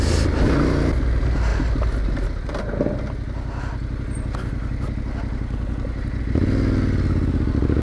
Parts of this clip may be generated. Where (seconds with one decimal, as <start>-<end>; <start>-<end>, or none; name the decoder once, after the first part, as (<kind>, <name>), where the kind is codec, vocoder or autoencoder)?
none

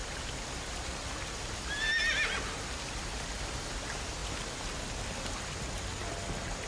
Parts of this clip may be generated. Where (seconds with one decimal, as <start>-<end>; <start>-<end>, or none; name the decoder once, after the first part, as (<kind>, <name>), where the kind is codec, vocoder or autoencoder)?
none

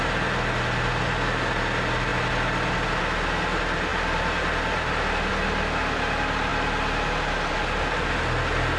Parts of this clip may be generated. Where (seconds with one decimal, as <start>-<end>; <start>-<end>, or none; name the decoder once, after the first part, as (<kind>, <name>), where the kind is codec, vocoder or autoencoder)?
none

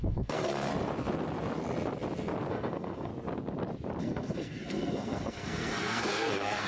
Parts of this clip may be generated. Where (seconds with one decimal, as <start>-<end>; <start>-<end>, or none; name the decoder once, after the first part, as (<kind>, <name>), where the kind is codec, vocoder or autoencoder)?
0.0-0.7 (codec, SNAC); 2.5-3.1; 4.0-6.7

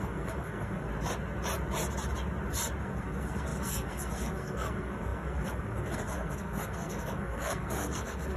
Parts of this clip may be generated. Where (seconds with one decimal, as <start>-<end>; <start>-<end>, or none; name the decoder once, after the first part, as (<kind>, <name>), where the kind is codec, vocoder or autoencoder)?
0.0-0.9 (codec, SNAC); 2.8-8.4